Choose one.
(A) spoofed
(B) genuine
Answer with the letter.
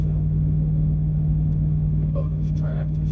A